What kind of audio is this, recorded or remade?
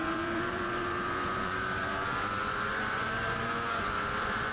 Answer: remade